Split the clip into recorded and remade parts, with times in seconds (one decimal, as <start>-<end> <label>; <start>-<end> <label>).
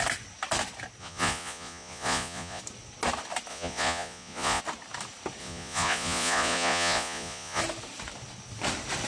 0.0-1.0 recorded; 1.0-2.6 remade; 2.6-3.5 recorded; 3.5-4.6 remade; 4.6-5.4 recorded; 5.4-7.6 remade; 7.6-9.1 recorded